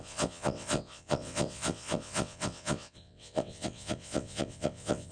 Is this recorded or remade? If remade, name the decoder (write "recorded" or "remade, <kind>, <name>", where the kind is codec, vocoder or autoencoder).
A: remade, vocoder, WaveNeXt